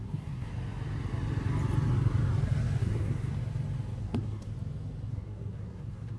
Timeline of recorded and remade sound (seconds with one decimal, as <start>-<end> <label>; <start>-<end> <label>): 0.0-0.5 remade; 0.5-2.8 recorded; 2.8-3.3 remade; 3.3-4.0 recorded; 4.0-4.5 remade; 4.5-5.1 recorded; 5.1-6.2 remade